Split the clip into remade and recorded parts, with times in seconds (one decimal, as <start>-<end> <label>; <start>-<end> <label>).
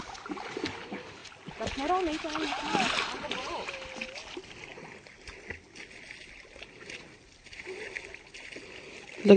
0.0-1.2 recorded; 1.2-4.1 remade; 4.1-9.4 recorded